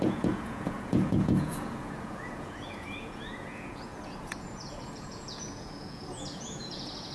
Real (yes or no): no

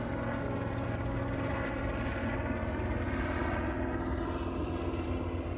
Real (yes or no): yes